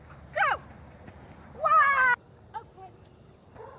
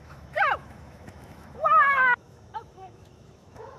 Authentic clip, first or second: first